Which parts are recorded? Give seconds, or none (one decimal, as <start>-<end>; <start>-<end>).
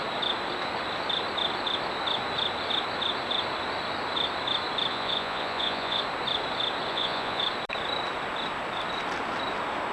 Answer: 0.0-4.9; 6.0-6.9; 7.4-9.9